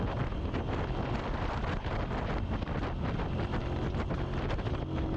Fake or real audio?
real